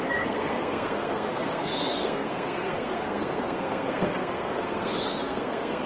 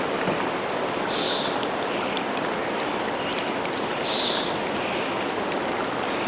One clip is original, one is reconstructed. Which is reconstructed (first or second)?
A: first